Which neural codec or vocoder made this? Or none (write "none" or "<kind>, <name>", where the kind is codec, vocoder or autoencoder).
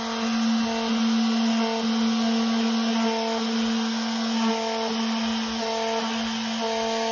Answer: none